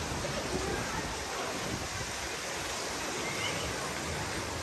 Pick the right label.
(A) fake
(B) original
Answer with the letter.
B